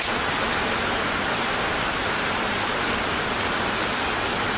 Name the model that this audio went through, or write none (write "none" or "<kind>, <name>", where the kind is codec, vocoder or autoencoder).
none